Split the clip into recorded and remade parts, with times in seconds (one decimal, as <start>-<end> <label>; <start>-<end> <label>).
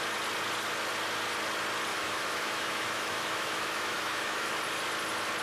0.0-1.9 recorded; 1.9-4.6 remade; 4.6-5.4 recorded